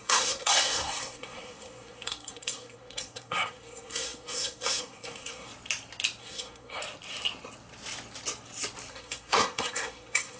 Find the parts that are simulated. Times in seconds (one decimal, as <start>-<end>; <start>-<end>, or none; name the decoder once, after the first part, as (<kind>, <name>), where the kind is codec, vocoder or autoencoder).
0.0-5.5 (codec, SNAC); 6.2-6.8; 8.9-10.4